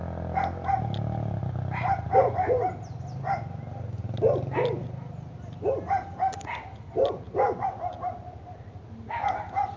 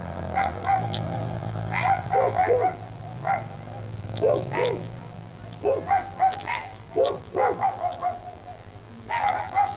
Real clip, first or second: first